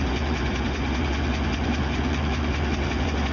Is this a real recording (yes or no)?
no